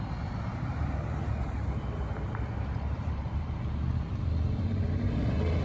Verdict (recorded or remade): remade